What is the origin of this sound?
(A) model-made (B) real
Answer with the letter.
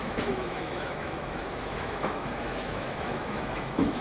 A